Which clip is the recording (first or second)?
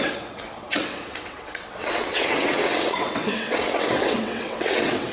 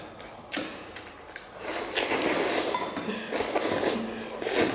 second